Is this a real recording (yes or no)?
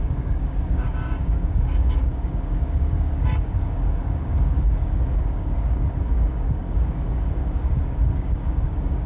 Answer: no